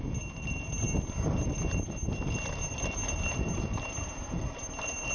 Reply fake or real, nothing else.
real